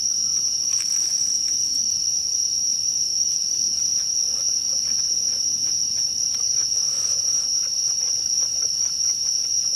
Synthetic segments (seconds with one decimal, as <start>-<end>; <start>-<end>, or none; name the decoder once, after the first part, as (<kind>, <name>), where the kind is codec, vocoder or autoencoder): 0.0-3.1 (vocoder, BigVGAN v2); 4.8-9.8